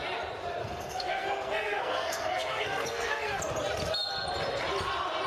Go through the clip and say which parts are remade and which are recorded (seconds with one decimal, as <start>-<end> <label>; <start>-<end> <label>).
0.0-0.6 recorded; 0.6-3.4 remade; 3.4-5.3 recorded